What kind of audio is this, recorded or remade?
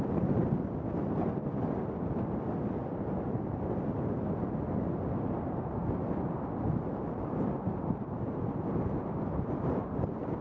recorded